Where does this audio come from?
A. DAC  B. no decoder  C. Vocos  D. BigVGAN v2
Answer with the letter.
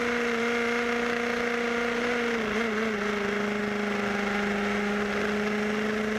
B